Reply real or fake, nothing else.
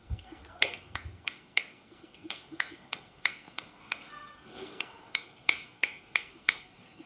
fake